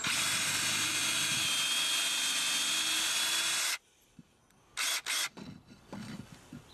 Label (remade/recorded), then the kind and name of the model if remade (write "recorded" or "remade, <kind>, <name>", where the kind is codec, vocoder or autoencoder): recorded